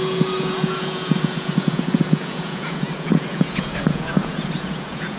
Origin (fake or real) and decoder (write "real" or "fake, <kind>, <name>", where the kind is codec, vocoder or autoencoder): fake, vocoder, Vocos